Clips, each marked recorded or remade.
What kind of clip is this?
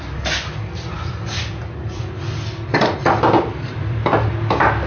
remade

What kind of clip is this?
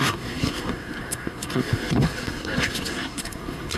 remade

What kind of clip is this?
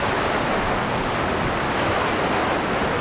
recorded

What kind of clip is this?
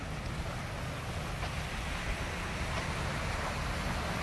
recorded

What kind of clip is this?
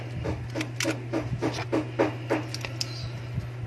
recorded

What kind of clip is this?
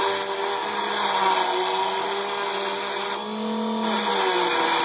recorded